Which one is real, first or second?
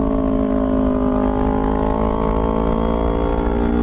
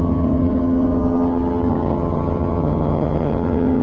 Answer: first